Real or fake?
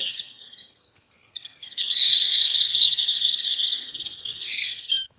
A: fake